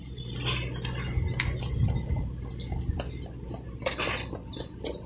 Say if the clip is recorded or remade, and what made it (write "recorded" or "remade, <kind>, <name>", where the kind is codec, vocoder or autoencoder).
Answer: recorded